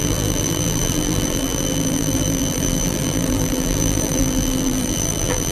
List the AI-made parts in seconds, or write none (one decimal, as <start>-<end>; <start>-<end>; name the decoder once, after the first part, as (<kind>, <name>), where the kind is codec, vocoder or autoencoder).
0.0-5.5 (vocoder, BigVGAN v2)

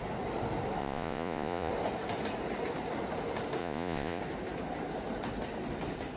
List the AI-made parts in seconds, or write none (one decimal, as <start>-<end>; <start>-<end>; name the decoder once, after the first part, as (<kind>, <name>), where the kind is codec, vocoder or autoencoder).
0.8-1.7 (vocoder, Vocos); 3.6-4.2

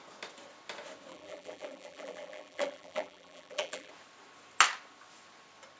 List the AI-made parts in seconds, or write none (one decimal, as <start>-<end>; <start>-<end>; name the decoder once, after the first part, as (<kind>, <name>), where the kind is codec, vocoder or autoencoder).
1.1-3.9 (vocoder, BigVGAN v2)

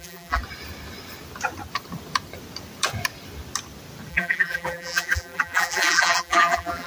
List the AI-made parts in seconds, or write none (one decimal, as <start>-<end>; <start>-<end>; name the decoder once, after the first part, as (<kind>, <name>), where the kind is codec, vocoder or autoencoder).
0.0-0.4 (vocoder, BigVGAN v2); 4.1-6.9

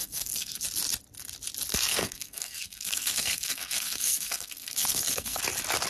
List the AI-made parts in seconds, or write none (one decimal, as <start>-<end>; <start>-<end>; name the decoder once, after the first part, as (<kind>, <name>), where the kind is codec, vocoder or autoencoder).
0.0-0.6 (codec, SNAC); 1.9-5.4